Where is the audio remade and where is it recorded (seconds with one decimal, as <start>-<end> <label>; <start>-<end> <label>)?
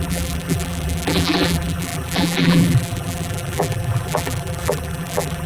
0.0-5.5 remade